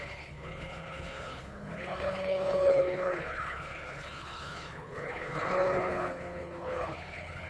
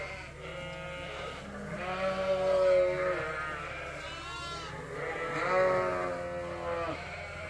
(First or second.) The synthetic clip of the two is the first